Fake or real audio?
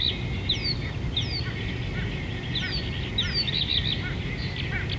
real